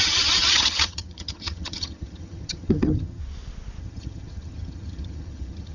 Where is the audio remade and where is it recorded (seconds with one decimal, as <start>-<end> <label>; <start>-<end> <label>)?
0.0-3.2 remade; 3.2-3.8 recorded; 3.8-5.7 remade